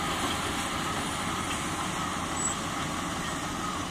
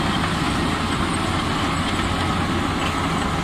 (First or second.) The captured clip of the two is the second